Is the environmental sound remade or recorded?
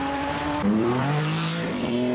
remade